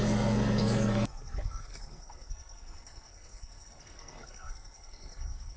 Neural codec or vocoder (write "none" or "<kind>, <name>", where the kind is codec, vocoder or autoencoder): codec, SNAC